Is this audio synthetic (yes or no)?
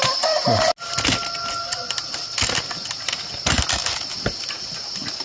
no